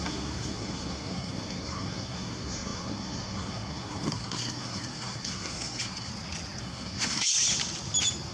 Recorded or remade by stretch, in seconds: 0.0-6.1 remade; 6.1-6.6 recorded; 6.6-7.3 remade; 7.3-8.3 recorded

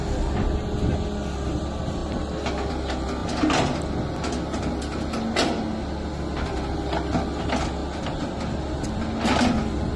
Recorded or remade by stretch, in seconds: 0.0-10.0 recorded

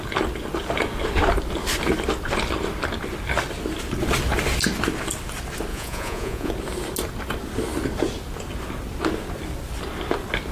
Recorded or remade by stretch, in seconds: 0.0-5.7 recorded; 5.7-6.5 remade; 6.5-10.5 recorded

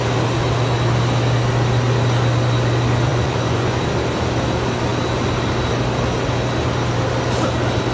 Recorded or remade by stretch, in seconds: 0.0-3.1 recorded; 3.1-3.8 remade; 3.8-7.9 recorded